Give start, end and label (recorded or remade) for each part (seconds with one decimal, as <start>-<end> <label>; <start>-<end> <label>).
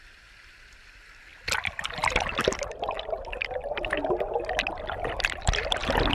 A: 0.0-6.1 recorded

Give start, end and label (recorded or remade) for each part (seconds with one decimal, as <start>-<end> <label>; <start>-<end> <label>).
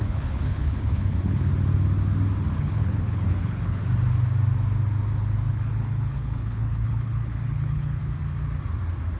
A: 0.0-1.5 remade; 1.5-2.6 recorded; 2.6-3.8 remade; 3.8-5.5 recorded; 5.5-8.0 remade; 8.0-9.2 recorded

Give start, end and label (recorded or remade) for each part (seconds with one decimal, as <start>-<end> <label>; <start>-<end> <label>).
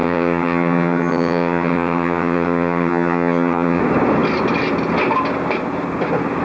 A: 0.0-3.8 remade; 3.8-6.4 recorded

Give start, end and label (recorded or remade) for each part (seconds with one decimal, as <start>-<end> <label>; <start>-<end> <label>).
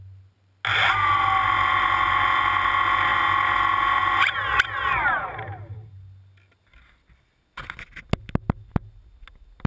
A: 0.0-9.7 recorded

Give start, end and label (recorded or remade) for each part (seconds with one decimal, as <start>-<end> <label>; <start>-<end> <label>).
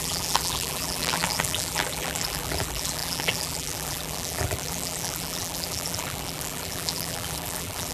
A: 0.0-7.9 remade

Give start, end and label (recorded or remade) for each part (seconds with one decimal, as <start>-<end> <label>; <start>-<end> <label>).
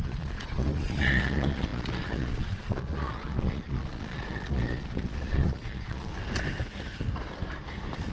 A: 0.0-6.1 remade; 6.1-8.1 recorded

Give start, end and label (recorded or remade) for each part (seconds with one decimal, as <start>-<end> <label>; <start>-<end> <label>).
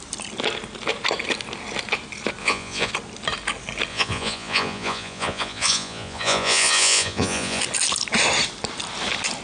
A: 0.0-2.4 recorded; 2.4-2.9 remade; 2.9-3.9 recorded; 3.9-7.6 remade; 7.6-9.4 recorded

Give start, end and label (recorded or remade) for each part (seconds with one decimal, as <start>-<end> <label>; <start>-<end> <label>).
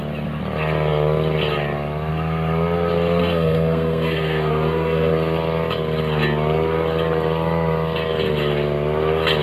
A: 0.0-3.2 recorded; 3.2-5.1 remade; 5.1-9.4 recorded